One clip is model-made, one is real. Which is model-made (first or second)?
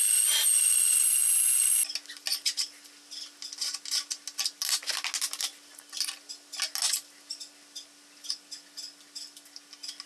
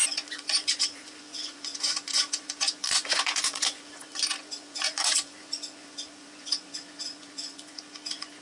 second